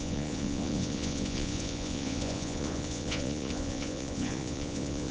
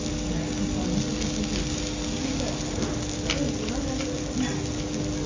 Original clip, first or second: second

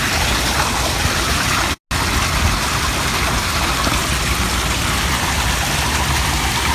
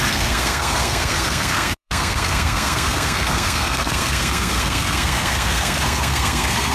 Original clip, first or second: first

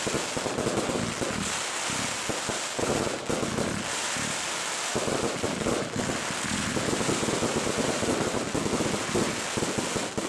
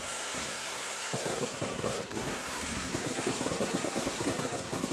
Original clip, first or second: first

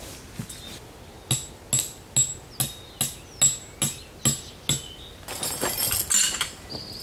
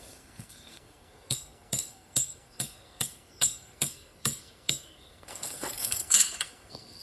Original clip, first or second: first